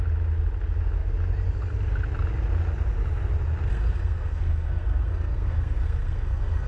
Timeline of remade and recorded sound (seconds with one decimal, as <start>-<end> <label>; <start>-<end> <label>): 0.0-3.7 recorded; 3.7-6.7 remade